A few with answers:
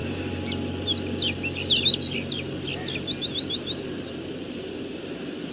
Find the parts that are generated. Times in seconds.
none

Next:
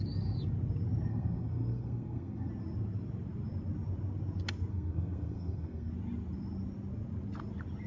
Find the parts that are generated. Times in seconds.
1.1-2.5 (codec, SNAC); 4.7-5.9

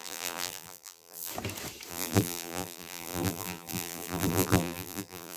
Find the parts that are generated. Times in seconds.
0.0-1.3 (vocoder, BigVGAN v2); 1.9-5.4

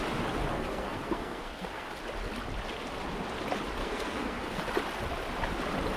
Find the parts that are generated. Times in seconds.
0.5-1.9 (codec, SNAC); 3.8-4.6

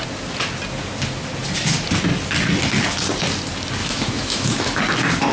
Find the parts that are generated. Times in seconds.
3.8-4.8 (autoencoder, DAC-VAE)

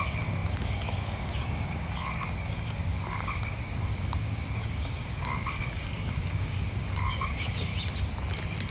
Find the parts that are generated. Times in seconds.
0.0-7.7 (codec, DAC)

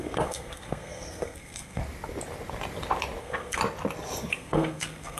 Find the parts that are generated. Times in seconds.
0.0-1.8 (codec, SNAC); 3.2-3.6; 4.3-5.2